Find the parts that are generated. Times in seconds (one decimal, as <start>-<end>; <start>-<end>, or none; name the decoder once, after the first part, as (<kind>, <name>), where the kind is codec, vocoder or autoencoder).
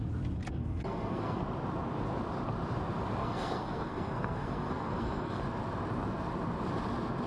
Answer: 0.6-1.4 (codec, SNAC); 3.2-5.4